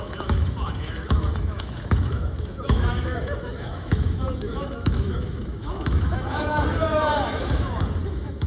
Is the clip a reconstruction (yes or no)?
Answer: yes